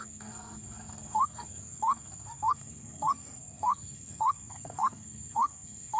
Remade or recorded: remade